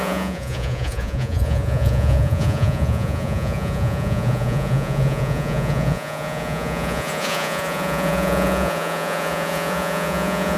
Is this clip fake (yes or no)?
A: yes